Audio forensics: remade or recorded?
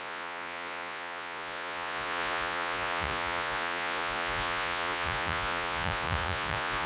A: remade